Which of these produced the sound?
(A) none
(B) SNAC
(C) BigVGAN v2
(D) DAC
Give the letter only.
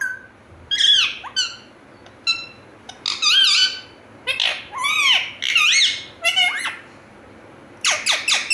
A